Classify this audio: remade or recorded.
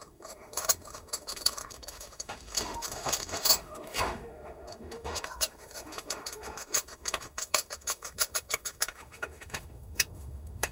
remade